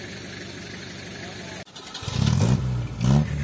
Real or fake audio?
real